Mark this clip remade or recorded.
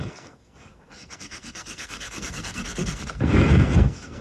remade